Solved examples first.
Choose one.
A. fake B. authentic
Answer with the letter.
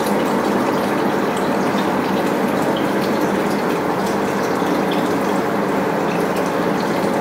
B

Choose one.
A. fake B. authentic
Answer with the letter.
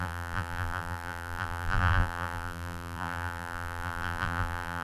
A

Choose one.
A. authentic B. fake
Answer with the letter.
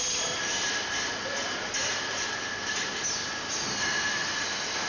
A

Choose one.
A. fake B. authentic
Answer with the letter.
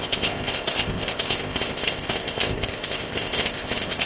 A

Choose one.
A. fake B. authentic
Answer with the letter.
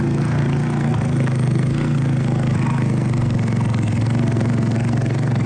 A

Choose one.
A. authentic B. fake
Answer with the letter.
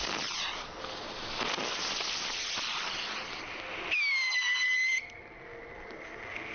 A